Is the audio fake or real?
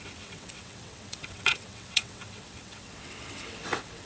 fake